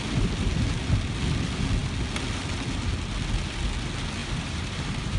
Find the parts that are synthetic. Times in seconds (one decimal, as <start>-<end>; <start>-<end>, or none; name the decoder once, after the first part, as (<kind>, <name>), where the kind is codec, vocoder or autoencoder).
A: 4.2-5.2 (vocoder, BigVGAN v2)